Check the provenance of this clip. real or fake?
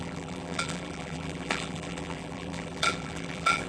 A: fake